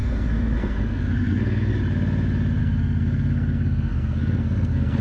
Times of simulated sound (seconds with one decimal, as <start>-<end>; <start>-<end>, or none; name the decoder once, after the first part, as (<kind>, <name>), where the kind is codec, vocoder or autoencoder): 0.0-1.7 (codec, SNAC); 2.6-5.0